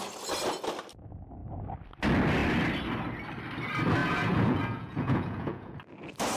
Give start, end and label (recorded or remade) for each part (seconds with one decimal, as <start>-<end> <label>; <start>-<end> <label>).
0.0-4.0 recorded; 4.0-5.8 remade; 5.8-6.4 recorded